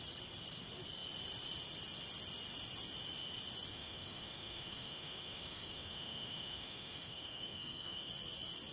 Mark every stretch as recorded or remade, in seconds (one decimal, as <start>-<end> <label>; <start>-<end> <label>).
0.0-3.7 recorded; 3.7-8.1 remade; 8.1-8.7 recorded